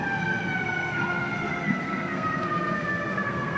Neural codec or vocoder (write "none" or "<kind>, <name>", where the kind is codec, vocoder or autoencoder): codec, SNAC